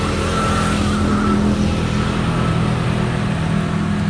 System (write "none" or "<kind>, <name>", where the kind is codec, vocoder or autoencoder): none